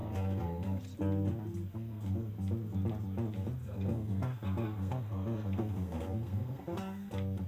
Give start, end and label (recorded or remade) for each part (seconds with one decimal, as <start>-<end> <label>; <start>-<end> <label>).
0.0-0.8 remade; 0.8-1.7 recorded; 1.7-2.3 remade; 2.3-3.6 recorded; 3.6-7.1 remade; 7.1-7.5 recorded